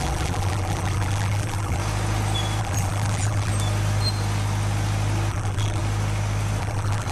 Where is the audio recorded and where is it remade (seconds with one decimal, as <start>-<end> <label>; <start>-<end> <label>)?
0.0-1.8 remade; 1.8-2.6 recorded; 2.6-3.5 remade; 3.5-5.3 recorded; 5.3-5.8 remade; 5.8-6.6 recorded; 6.6-7.1 remade